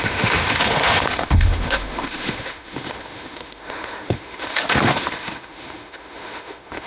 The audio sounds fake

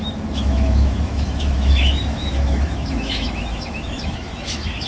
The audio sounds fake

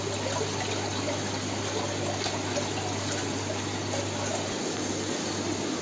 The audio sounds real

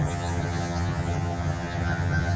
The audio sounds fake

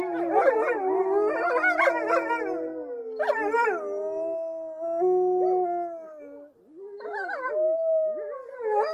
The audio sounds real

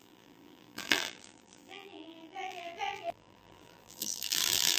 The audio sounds fake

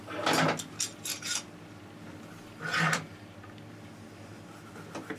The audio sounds real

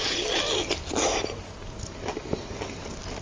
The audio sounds real